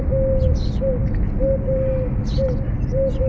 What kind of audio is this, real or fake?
real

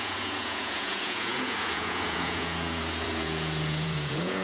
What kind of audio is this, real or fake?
fake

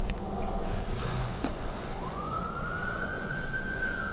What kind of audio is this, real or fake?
fake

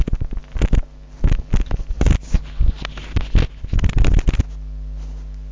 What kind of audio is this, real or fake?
real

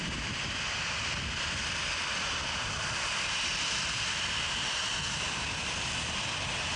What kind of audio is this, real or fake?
real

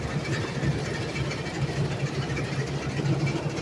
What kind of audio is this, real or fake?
real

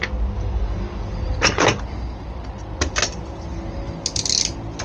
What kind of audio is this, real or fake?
real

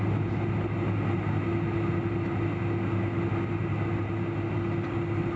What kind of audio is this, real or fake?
real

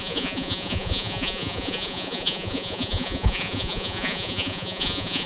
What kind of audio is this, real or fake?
fake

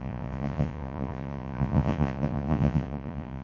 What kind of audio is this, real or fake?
fake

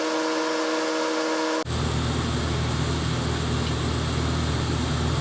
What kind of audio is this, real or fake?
real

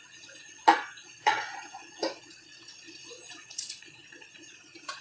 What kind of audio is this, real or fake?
fake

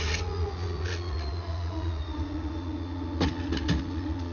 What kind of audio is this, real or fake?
fake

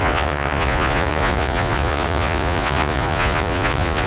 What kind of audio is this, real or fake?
fake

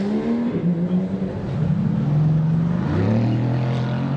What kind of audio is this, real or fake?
real